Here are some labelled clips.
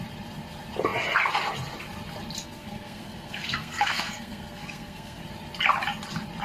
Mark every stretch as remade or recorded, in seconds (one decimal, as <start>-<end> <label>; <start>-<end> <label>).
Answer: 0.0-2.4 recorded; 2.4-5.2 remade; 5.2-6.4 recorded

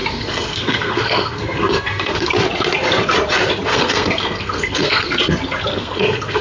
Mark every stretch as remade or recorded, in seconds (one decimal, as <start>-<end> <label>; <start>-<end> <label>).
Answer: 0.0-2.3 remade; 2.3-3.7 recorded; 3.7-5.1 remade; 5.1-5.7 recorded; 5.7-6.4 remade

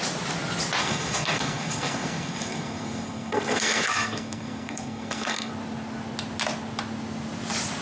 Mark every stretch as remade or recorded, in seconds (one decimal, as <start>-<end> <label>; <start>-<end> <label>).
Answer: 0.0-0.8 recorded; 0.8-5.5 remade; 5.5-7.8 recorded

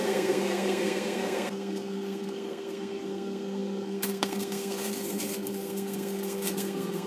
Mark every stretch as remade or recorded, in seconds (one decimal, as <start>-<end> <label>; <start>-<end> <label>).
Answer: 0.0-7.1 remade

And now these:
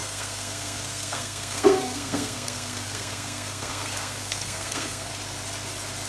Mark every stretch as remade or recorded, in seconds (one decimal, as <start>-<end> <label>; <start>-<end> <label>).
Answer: 0.0-5.1 remade; 5.1-6.1 recorded

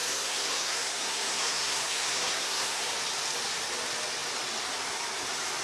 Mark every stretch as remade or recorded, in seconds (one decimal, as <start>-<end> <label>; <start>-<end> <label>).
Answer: 0.0-2.9 remade; 2.9-5.6 recorded